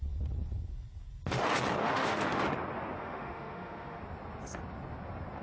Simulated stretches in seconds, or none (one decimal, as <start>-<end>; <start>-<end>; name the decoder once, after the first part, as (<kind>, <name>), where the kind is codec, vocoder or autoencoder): 1.8-2.4 (autoencoder, DAC-VAE); 3.0-4.0